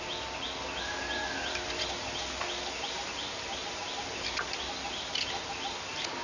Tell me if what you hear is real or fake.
real